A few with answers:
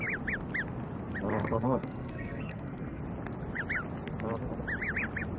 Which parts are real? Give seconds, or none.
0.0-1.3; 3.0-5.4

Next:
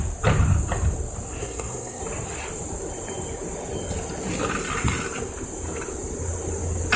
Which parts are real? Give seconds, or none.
0.0-1.4; 2.0-7.0

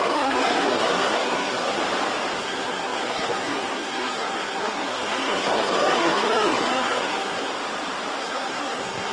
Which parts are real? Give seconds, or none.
1.8-2.4; 7.5-8.2